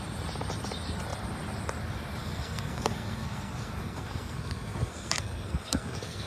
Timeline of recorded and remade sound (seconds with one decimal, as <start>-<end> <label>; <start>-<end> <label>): 0.0-2.2 recorded; 2.2-6.3 remade